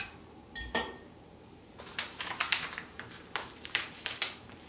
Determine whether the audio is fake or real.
fake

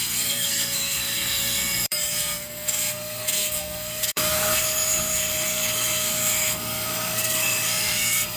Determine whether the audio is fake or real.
fake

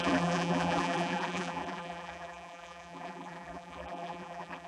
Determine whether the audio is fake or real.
fake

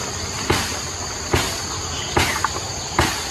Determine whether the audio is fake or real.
real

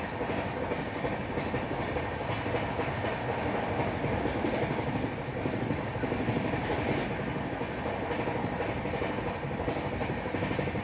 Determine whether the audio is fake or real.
real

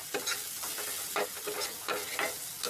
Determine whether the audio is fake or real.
real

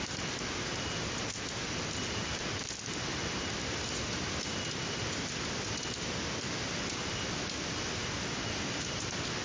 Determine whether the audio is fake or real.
real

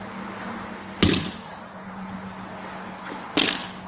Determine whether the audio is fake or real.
real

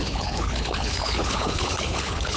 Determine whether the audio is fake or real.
fake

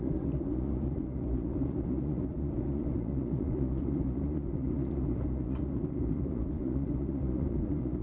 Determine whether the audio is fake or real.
fake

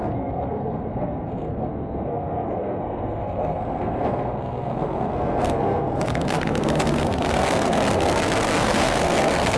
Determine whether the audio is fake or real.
fake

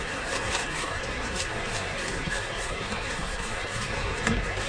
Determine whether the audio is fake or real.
fake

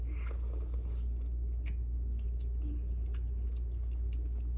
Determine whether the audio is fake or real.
real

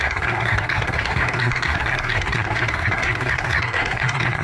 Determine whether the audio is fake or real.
fake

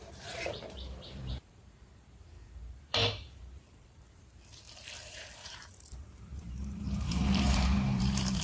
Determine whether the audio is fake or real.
fake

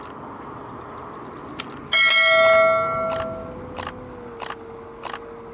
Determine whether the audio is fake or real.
real